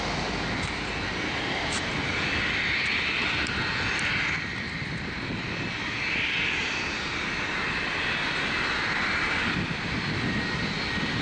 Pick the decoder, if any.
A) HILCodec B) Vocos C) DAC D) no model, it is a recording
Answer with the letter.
D